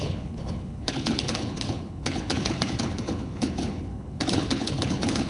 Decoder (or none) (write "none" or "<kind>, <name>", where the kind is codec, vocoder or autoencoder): codec, HILCodec